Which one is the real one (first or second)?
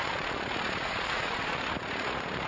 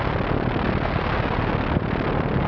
second